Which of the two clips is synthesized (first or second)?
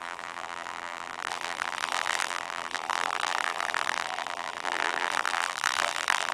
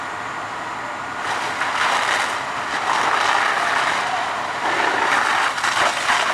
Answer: first